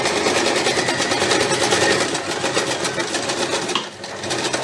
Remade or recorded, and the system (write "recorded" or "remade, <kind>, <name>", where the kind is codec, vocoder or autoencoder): recorded